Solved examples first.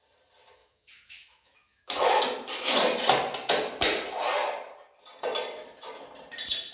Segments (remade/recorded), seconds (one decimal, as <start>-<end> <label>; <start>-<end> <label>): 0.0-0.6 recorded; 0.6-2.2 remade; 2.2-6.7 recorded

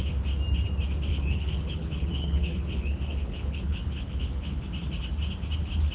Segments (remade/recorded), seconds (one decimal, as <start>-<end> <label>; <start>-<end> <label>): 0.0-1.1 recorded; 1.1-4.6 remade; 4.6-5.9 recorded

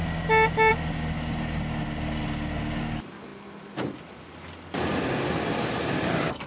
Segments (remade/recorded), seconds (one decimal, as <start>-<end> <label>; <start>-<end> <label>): 0.0-6.5 recorded